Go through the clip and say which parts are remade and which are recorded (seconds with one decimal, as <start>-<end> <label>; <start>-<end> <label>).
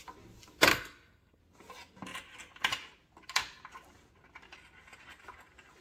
0.0-0.7 recorded; 0.7-1.4 remade; 1.4-5.8 recorded